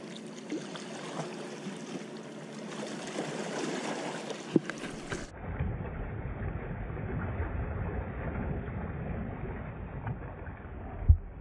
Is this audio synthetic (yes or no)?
no